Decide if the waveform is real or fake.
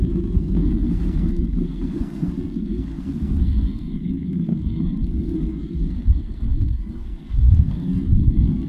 fake